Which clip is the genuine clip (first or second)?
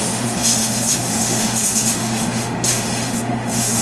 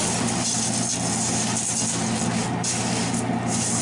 second